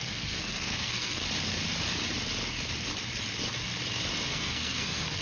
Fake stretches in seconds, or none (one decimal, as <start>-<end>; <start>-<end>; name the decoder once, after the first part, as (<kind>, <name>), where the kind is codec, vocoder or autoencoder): 0.0-1.2 (codec, SNAC); 4.3-5.2